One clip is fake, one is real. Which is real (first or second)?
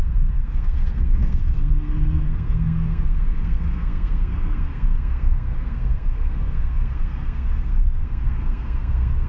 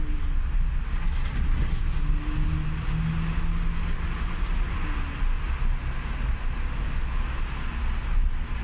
second